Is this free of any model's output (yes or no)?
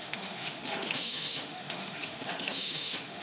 no